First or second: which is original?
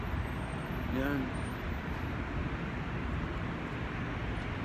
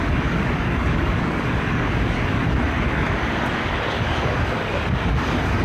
first